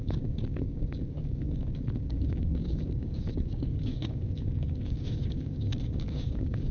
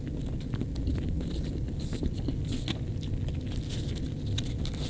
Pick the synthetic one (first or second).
first